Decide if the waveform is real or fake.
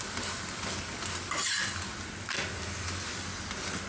real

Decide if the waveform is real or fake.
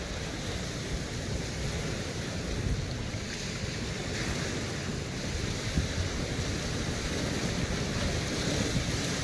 real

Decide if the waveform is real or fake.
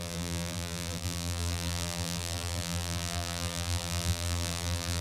fake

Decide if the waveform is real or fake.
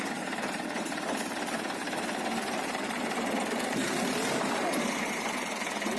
fake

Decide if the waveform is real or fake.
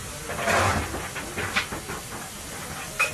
real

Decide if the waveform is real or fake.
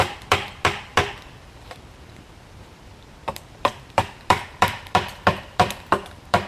fake